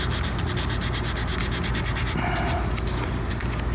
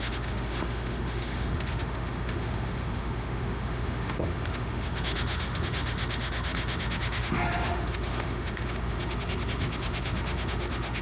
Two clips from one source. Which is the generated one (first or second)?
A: second